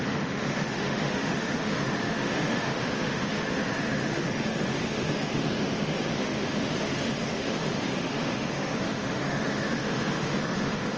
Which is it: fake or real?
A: fake